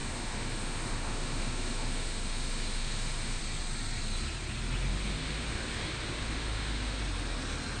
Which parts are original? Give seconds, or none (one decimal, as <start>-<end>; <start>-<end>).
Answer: 3.4-4.9; 7.0-7.8